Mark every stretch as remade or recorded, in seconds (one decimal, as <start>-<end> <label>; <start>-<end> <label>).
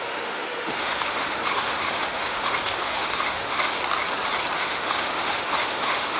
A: 0.0-3.8 remade; 3.8-4.6 recorded; 4.6-6.2 remade